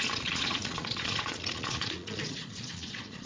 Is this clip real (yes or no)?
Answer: no